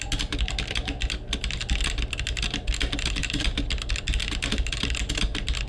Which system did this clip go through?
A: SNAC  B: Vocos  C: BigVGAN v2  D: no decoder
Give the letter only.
D